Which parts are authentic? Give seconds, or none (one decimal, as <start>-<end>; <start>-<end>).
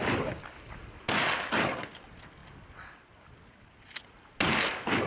0.0-5.1